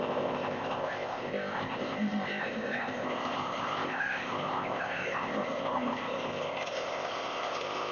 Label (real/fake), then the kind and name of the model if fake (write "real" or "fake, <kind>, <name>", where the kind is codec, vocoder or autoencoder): fake, codec, ZipCodec